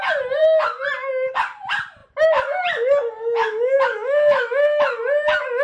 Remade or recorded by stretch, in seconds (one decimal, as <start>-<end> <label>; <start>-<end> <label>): 0.0-3.5 recorded; 3.5-5.0 remade; 5.0-5.6 recorded